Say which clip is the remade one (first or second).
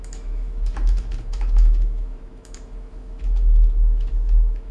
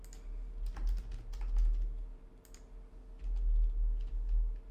first